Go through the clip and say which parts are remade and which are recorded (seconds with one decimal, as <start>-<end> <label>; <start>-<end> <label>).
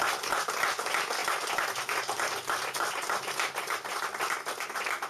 0.0-5.1 recorded